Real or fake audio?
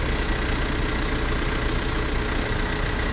real